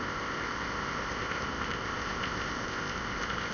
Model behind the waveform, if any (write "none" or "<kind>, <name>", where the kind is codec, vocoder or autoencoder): codec, ZipCodec